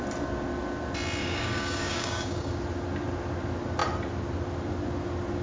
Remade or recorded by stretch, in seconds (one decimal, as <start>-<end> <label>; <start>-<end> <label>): 0.0-1.2 recorded; 1.2-2.5 remade; 2.5-5.4 recorded